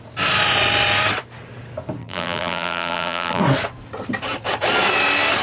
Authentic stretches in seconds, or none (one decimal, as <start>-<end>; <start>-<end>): 0.0-2.0; 3.4-5.4